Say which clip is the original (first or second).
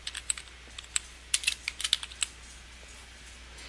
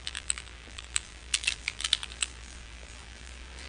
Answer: first